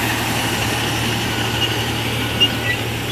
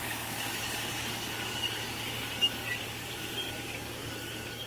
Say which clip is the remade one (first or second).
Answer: second